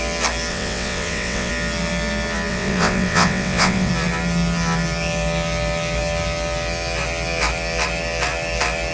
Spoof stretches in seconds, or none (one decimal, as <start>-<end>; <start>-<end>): 0.5-1.5; 2.5-3.9